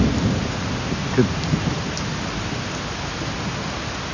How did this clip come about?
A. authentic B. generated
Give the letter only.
A